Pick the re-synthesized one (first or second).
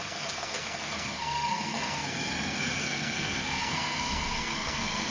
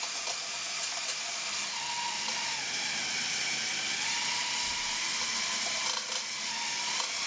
first